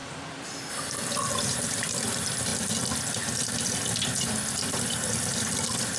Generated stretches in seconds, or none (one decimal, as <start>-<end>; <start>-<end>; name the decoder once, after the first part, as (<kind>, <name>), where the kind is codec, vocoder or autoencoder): 0.7-2.5 (vocoder, BigVGAN v2); 5.4-6.0